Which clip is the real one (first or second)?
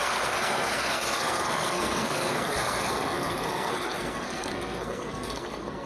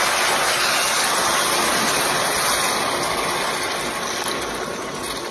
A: second